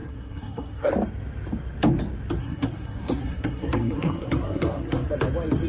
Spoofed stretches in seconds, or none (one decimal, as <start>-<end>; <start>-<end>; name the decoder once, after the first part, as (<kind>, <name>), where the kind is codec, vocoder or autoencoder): 0.0-0.9 (codec, SNAC); 2.4-5.1